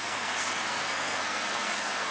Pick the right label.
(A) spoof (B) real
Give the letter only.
A